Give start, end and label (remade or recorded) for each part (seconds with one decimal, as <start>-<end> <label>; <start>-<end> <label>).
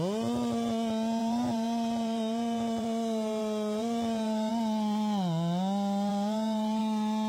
0.0-1.2 recorded; 1.2-4.5 remade; 4.5-6.1 recorded; 6.1-6.8 remade; 6.8-7.3 recorded